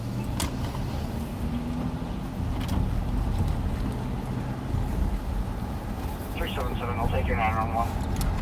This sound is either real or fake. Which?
real